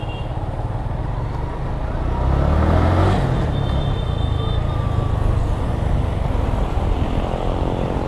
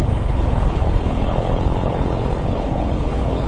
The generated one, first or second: second